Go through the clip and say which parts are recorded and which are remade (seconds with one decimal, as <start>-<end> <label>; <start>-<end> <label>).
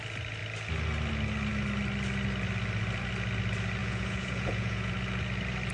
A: 0.0-3.8 recorded; 3.8-4.9 remade; 4.9-5.7 recorded